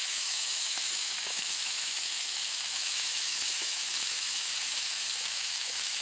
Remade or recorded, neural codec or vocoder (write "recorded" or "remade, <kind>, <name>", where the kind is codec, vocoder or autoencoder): remade, autoencoder, DAC-VAE